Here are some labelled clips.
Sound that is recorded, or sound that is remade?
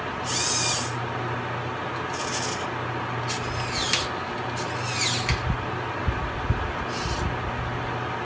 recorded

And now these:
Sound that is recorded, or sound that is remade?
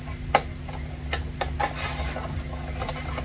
recorded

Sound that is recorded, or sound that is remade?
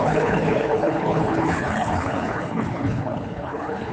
remade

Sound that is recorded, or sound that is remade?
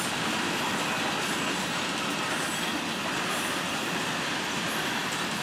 recorded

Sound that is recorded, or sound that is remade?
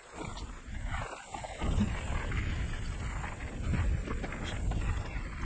recorded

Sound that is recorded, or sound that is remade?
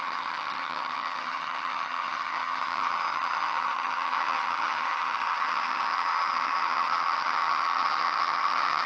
remade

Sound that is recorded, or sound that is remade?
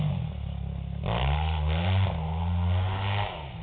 recorded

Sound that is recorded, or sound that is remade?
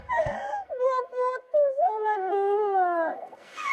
remade